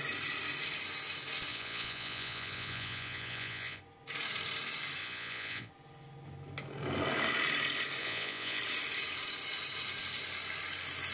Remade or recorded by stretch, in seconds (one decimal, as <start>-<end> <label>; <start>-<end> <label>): 0.0-1.5 recorded; 1.5-3.8 remade; 3.8-5.0 recorded; 5.0-5.7 remade; 5.7-8.0 recorded; 8.0-8.6 remade; 8.6-11.1 recorded